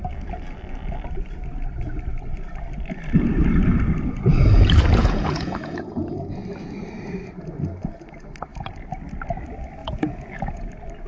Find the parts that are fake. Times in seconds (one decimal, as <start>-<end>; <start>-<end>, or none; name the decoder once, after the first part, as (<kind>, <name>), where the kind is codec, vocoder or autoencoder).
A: 5.0-6.4 (vocoder, Vocos); 9.8-10.7